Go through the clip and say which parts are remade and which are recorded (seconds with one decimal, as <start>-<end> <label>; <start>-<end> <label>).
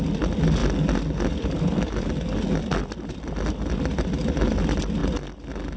0.0-5.8 recorded